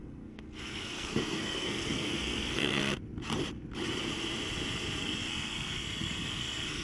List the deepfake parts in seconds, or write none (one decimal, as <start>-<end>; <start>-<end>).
0.0-2.8; 5.0-6.8